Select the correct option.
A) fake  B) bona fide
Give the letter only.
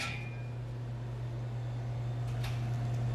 B